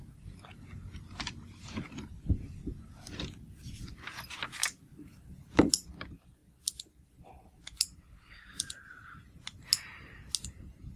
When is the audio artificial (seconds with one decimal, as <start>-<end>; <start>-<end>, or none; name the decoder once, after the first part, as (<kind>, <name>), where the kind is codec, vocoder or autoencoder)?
4.6-5.7 (vocoder, BigVGAN v2); 8.5-11.0